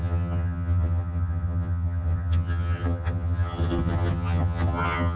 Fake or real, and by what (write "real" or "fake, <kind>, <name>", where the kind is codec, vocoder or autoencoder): fake, vocoder, HiFi-GAN